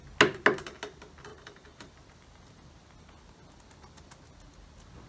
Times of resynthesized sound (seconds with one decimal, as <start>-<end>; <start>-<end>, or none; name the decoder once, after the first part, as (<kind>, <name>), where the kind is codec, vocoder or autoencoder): 1.3-1.9 (vocoder, BigVGAN v2)